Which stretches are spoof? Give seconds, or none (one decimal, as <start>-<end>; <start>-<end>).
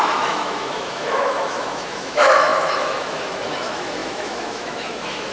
0.0-5.3